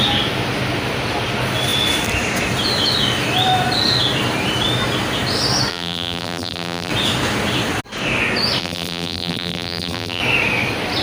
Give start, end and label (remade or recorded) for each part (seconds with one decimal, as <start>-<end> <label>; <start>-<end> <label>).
0.0-5.7 recorded; 5.7-6.9 remade; 6.9-8.6 recorded; 8.6-10.2 remade; 10.2-11.0 recorded